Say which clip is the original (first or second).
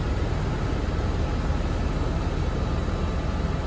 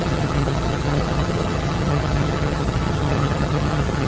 first